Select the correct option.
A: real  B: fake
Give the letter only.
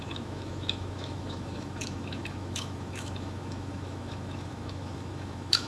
B